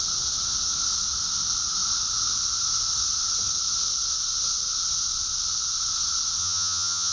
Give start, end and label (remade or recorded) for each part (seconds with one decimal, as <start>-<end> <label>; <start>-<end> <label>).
0.0-6.4 recorded; 6.4-7.1 remade